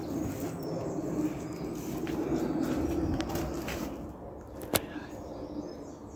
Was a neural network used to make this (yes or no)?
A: no